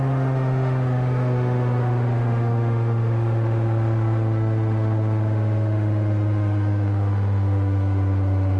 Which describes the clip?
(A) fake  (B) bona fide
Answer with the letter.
A